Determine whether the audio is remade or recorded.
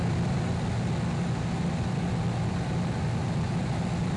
recorded